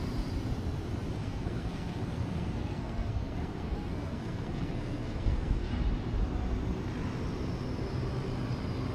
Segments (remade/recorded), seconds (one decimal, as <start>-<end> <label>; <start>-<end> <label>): 0.0-1.2 recorded; 1.2-5.7 remade; 5.7-8.9 recorded